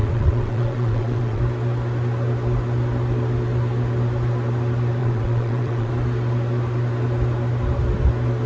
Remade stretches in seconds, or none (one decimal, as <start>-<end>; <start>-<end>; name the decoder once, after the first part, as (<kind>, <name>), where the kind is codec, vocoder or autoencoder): 0.0-1.4 (vocoder, WaveNeXt); 5.0-5.9